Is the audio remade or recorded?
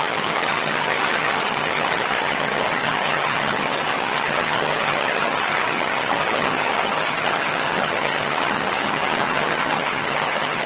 remade